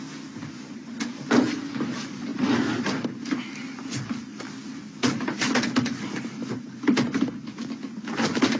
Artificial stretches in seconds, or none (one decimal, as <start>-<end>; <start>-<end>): none